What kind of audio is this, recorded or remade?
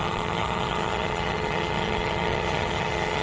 remade